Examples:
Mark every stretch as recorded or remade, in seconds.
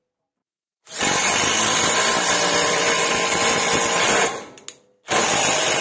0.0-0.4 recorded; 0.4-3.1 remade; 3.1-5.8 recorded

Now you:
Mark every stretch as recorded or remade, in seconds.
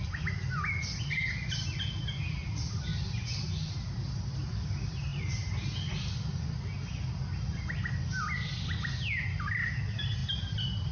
0.0-10.9 recorded